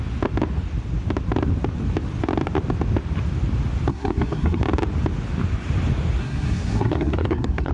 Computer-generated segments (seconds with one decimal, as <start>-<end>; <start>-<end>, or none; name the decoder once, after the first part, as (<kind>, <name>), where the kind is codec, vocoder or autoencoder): 3.9-4.6 (codec, SNAC); 6.2-7.7